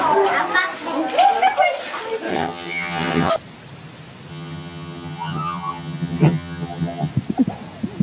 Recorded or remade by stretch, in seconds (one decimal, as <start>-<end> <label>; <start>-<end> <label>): 0.0-2.3 recorded; 2.3-3.3 remade; 3.3-4.3 recorded; 4.3-7.1 remade; 7.1-8.0 recorded